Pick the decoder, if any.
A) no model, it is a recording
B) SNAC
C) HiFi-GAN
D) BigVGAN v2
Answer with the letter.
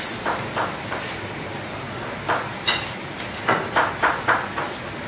D